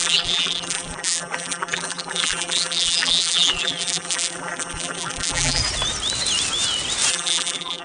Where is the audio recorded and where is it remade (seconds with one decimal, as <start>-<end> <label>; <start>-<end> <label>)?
0.0-5.6 remade; 5.6-7.1 recorded; 7.1-7.8 remade